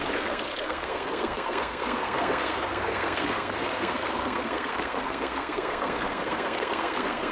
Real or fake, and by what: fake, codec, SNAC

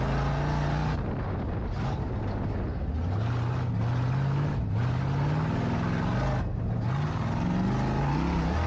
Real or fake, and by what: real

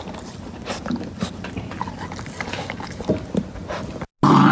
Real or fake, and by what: real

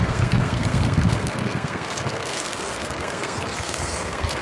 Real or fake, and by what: fake, codec, SNAC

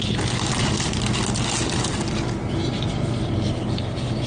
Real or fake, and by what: real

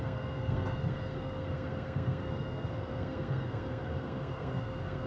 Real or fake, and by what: fake, codec, SNAC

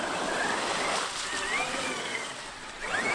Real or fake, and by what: real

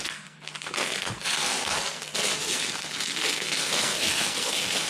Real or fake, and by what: fake, codec, SNAC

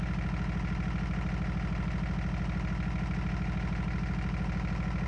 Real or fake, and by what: real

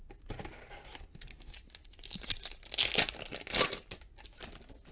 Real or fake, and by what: real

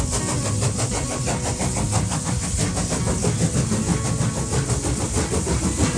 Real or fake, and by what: real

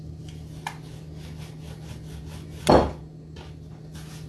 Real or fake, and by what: real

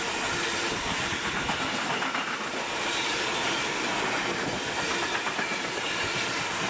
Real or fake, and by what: real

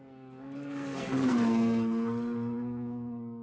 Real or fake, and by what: fake, codec, SNAC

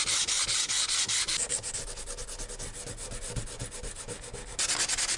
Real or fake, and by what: real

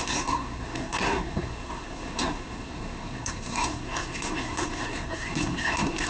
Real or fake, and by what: fake, codec, SNAC